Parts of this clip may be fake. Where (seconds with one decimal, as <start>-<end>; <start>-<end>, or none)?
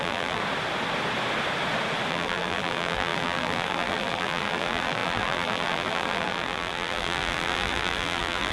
0.0-0.4; 2.1-8.5